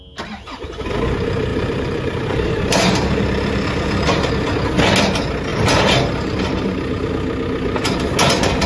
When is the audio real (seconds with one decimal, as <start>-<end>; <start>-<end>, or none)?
0.0-1.5; 4.3-5.5; 7.1-8.7